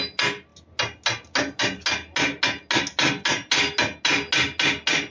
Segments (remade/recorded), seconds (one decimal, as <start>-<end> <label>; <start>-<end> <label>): 0.0-5.1 recorded

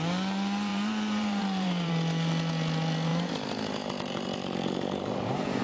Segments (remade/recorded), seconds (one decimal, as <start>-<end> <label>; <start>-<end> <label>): 0.0-0.7 recorded; 0.7-1.9 remade; 1.9-3.1 recorded; 3.1-5.6 remade

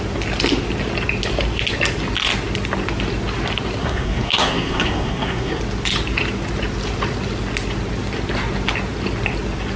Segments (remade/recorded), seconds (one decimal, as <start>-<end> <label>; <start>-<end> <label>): 0.0-3.8 recorded; 3.8-5.6 remade; 5.6-9.8 recorded

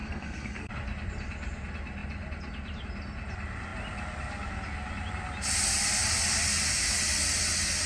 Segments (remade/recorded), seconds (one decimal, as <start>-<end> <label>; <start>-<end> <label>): 0.0-0.7 remade; 0.7-7.9 recorded

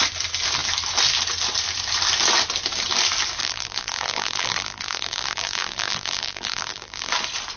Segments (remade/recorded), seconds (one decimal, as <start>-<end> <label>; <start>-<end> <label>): 0.0-3.4 recorded; 3.4-7.1 remade; 7.1-7.6 recorded

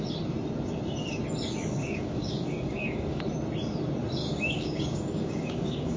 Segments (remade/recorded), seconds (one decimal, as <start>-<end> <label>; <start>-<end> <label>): 0.0-1.8 recorded; 1.8-3.2 remade; 3.2-4.2 recorded; 4.2-6.0 remade